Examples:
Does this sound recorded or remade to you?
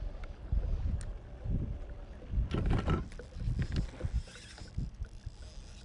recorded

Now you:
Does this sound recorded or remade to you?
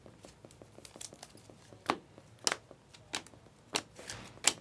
recorded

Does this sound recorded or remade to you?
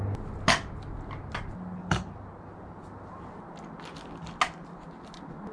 recorded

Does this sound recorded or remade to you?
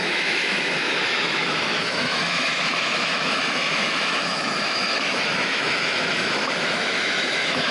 remade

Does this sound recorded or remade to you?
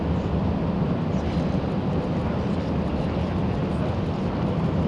recorded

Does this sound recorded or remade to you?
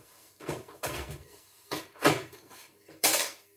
remade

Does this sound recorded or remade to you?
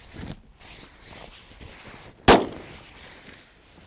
recorded